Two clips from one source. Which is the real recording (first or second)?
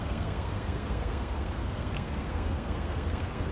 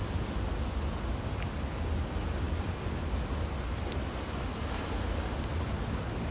second